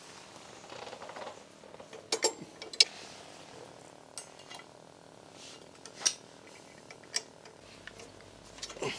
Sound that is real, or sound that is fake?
real